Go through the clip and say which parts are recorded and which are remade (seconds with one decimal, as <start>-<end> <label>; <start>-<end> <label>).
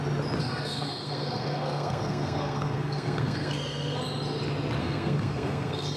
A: 0.0-0.4 recorded; 0.4-4.0 remade; 4.0-4.8 recorded; 4.8-6.0 remade